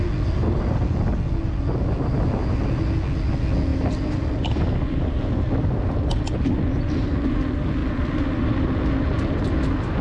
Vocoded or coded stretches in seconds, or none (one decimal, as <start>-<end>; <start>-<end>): 3.7-5.0; 7.8-8.6